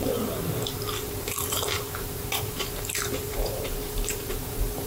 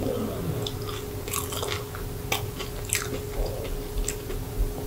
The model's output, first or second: first